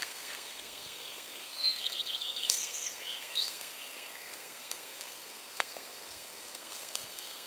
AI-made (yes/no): yes